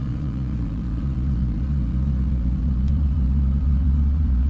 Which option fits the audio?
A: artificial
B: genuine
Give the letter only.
A